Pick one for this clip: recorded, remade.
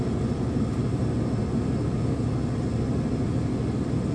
recorded